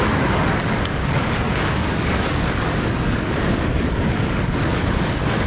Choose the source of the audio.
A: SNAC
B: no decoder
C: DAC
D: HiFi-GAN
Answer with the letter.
C